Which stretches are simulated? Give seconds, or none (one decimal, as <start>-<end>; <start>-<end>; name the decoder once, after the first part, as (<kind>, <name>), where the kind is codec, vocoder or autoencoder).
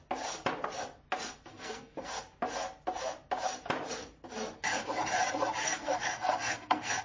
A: 1.5-2.1 (codec, SNAC); 5.6-7.0